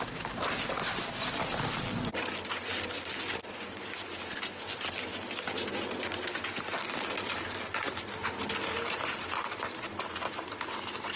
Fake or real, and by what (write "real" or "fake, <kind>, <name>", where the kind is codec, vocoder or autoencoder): real